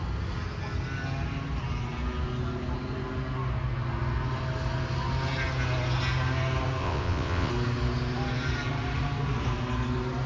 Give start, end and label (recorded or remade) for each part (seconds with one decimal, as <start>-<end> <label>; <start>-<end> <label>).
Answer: 0.0-6.8 recorded; 6.8-7.5 remade; 7.5-10.3 recorded

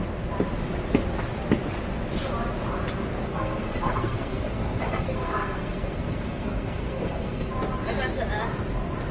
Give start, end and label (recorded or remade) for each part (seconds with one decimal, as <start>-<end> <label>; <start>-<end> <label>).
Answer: 0.0-3.3 recorded; 3.3-7.5 remade; 7.5-9.1 recorded

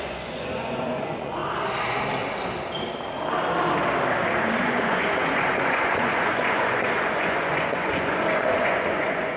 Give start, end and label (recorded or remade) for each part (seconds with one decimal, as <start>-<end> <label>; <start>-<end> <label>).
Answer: 0.0-1.4 remade; 1.4-4.6 recorded; 4.6-9.4 remade